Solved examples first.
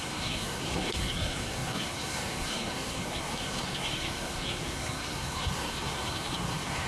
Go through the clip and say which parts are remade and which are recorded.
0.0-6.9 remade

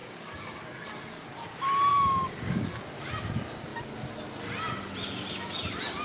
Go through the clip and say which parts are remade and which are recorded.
0.0-0.6 remade; 0.6-1.9 recorded; 1.9-2.7 remade; 2.7-6.0 recorded

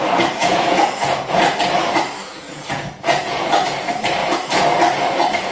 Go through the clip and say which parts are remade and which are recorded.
0.0-0.4 recorded; 0.4-1.4 remade; 1.4-2.3 recorded; 2.3-3.5 remade; 3.5-5.5 recorded

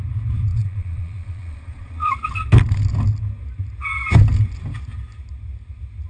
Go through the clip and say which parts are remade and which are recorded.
0.0-0.5 recorded; 0.5-2.1 remade; 2.1-6.1 recorded

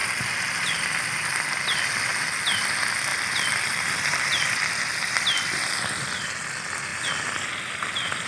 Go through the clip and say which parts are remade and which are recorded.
0.0-2.2 remade; 2.2-3.1 recorded; 3.1-6.3 remade; 6.3-6.9 recorded; 6.9-8.3 remade

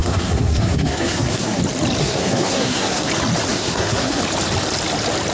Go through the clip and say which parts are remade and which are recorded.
0.0-1.6 remade; 1.6-2.0 recorded; 2.0-3.1 remade; 3.1-3.5 recorded; 3.5-4.2 remade; 4.2-5.3 recorded